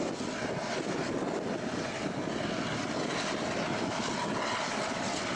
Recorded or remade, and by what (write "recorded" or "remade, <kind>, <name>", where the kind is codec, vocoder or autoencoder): recorded